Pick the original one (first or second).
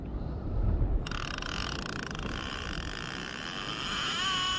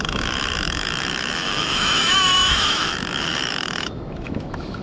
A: first